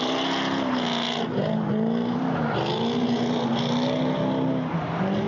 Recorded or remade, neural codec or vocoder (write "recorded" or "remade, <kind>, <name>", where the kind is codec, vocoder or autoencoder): recorded